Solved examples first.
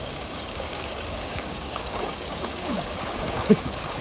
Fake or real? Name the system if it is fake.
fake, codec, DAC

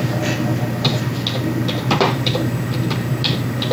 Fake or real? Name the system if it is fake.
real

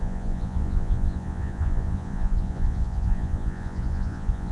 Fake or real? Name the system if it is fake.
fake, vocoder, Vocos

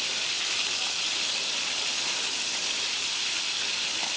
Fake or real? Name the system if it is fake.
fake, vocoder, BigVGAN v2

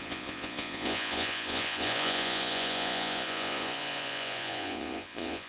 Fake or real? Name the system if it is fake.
fake, vocoder, Vocos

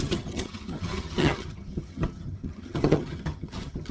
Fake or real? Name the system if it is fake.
fake, vocoder, HiFi-GAN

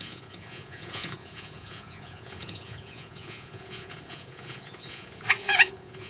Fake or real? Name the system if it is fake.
fake, vocoder, Vocos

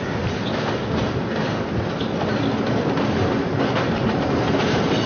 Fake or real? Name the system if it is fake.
real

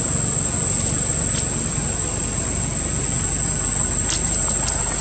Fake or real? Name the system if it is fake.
real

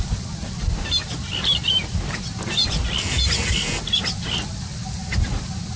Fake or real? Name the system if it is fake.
real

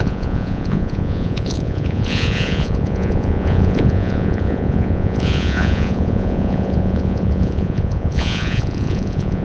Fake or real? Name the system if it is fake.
fake, vocoder, Vocos